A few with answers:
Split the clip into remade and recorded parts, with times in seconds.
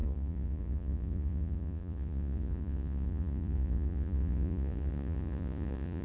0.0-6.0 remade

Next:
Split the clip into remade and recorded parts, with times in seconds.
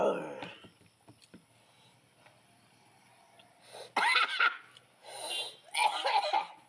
0.0-6.7 recorded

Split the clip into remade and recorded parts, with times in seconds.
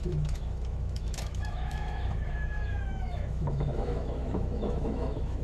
0.0-5.4 remade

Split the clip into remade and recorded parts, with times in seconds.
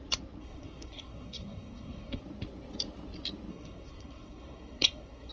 0.0-0.4 recorded; 0.4-2.2 remade; 2.2-3.5 recorded; 3.5-5.3 remade